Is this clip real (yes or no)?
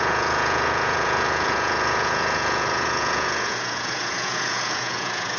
no